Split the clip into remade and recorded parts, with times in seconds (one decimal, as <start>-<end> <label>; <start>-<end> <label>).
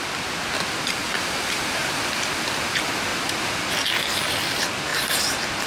0.0-1.0 recorded; 1.0-1.9 remade; 1.9-5.7 recorded